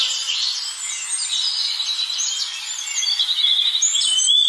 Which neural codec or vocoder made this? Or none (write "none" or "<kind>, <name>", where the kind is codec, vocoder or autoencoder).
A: none